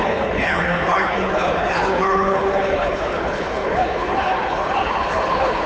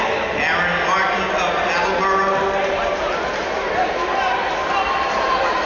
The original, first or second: second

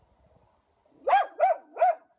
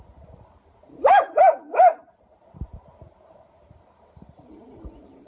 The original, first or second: first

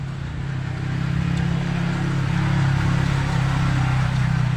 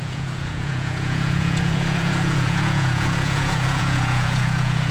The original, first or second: first